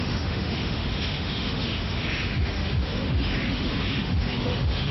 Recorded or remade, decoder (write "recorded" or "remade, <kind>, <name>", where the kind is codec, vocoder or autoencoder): remade, autoencoder, DAC-VAE